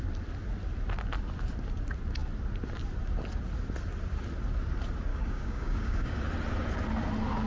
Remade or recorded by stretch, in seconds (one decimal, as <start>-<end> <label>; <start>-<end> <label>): 0.0-5.1 recorded; 5.1-6.2 remade; 6.2-7.5 recorded